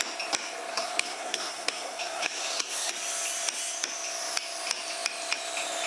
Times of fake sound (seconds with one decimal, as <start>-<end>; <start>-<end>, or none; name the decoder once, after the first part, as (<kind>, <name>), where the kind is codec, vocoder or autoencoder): 0.7-2.9 (codec, SNAC)